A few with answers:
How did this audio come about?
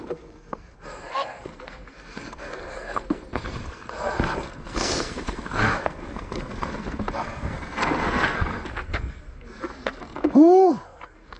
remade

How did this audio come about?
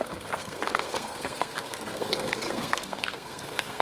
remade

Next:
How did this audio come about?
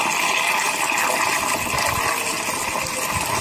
recorded